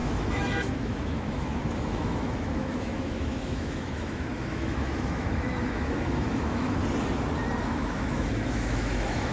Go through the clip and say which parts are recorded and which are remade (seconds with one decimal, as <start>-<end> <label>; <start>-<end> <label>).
0.0-6.8 remade; 6.8-7.6 recorded; 7.6-9.3 remade